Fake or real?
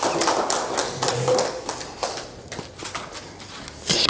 real